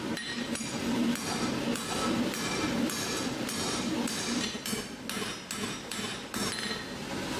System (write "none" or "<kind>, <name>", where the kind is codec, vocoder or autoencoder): none